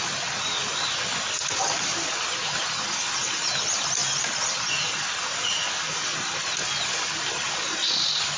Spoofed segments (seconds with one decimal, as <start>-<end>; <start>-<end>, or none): none